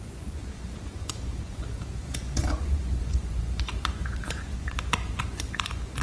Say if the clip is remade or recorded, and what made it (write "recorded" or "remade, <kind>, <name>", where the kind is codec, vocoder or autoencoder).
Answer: remade, vocoder, Vocos